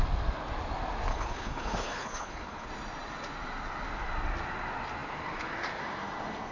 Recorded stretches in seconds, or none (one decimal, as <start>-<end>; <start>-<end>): 0.0-1.1; 2.7-6.5